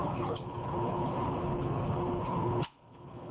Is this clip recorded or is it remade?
remade